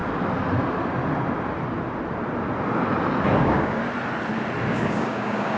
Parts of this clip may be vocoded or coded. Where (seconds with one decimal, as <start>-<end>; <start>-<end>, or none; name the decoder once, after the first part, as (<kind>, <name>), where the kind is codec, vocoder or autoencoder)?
3.4-3.8 (codec, DAC); 4.7-5.6